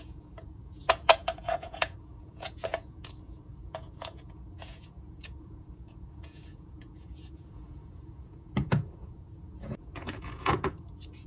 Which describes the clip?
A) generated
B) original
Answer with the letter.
A